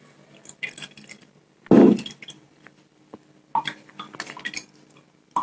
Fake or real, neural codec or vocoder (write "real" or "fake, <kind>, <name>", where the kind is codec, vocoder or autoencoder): real